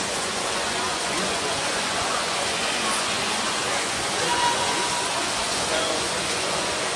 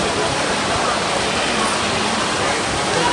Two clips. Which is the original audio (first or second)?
second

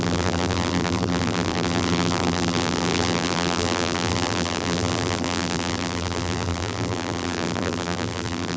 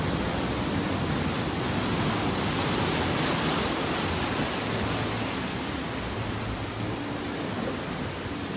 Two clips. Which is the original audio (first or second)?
second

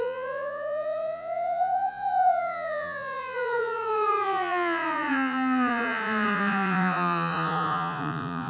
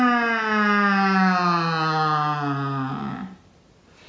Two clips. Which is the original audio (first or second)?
second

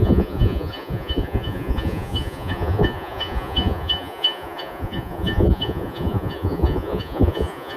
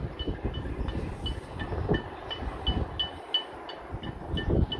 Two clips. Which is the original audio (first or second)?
second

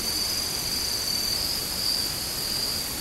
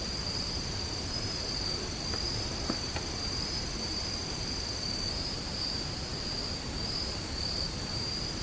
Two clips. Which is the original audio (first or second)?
first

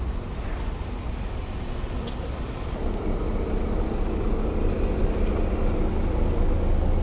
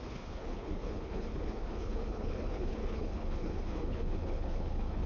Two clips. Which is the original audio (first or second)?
first